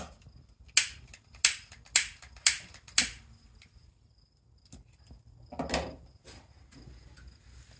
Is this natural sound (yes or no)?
yes